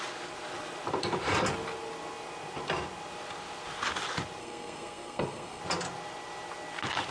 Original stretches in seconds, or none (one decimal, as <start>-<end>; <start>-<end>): 0.0-4.4; 5.6-7.1